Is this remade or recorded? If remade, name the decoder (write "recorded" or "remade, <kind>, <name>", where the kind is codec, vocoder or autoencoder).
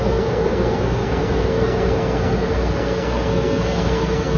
remade, codec, SNAC